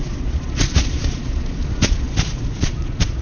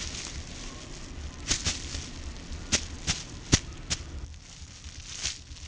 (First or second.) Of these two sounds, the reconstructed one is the first